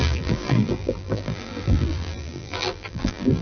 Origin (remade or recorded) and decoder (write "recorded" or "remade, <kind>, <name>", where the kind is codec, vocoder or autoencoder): remade, vocoder, BigVGAN v2